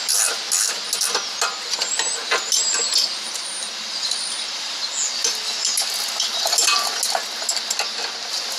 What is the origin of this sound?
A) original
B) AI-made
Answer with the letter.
A